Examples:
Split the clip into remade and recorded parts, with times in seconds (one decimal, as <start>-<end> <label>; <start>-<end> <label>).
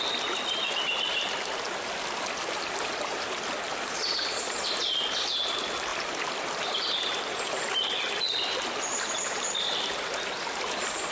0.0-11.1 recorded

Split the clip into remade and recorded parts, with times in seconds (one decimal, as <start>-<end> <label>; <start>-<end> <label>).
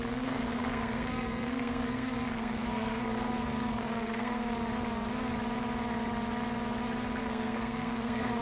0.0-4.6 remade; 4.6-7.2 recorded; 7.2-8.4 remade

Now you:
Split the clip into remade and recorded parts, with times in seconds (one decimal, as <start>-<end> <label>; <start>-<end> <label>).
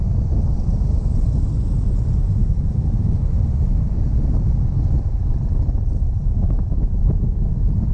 0.0-2.4 recorded; 2.4-7.1 remade; 7.1-7.9 recorded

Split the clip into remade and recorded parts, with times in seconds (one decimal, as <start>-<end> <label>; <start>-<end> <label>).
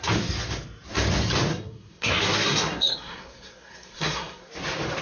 0.0-1.5 recorded; 1.5-4.5 remade; 4.5-5.0 recorded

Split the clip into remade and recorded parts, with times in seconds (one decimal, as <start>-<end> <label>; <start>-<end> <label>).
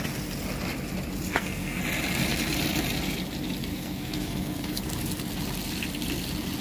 0.0-1.3 recorded; 1.3-1.8 remade; 1.8-3.7 recorded; 3.7-4.8 remade; 4.8-6.6 recorded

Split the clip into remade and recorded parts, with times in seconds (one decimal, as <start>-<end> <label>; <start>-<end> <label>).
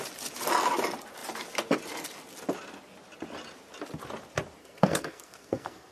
0.0-4.6 recorded; 4.6-5.9 remade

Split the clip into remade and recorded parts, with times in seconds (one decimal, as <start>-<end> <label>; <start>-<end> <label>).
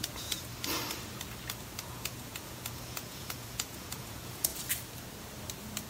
0.0-0.5 remade; 0.5-1.8 recorded; 1.8-4.5 remade; 4.5-5.9 recorded